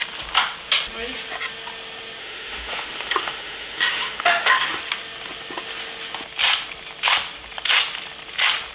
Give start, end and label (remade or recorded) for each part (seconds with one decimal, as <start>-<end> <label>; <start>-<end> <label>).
0.0-2.2 recorded; 2.2-4.8 remade; 4.8-8.7 recorded